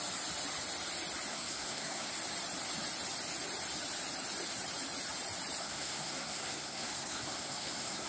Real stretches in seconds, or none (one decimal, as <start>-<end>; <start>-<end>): 0.0-1.3; 2.1-5.6